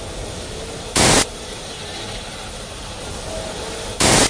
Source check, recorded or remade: recorded